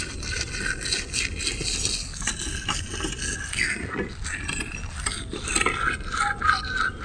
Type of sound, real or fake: real